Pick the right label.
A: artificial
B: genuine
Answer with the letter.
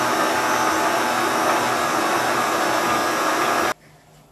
B